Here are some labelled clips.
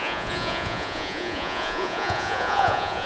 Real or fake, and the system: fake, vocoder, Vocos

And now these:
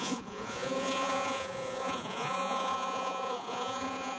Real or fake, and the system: fake, vocoder, Vocos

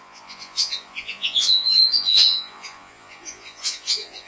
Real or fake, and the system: fake, vocoder, Vocos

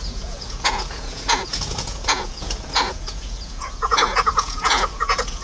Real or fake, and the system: fake, vocoder, Vocos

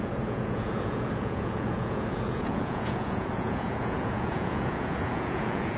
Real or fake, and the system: fake, vocoder, Vocos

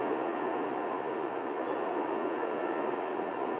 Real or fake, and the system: fake, vocoder, Vocos